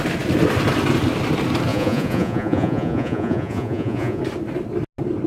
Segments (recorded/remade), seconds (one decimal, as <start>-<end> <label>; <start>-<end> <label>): 0.0-1.7 recorded; 1.7-4.2 remade; 4.2-5.3 recorded